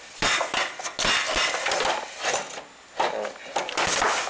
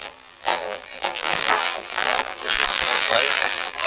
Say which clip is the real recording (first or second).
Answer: first